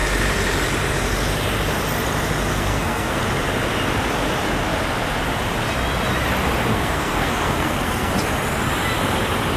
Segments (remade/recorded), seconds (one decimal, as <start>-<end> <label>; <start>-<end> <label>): 0.0-2.5 recorded; 2.5-3.2 remade; 3.2-6.7 recorded; 6.7-8.1 remade; 8.1-9.6 recorded